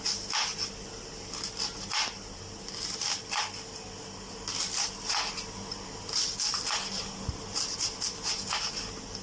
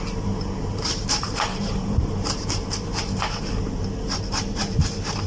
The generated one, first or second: second